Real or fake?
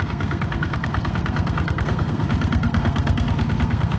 fake